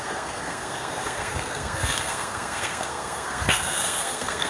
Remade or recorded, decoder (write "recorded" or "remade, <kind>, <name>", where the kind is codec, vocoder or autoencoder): remade, codec, SNAC